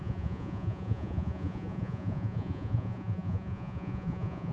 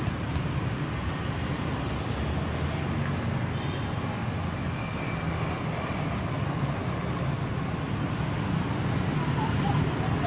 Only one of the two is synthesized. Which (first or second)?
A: first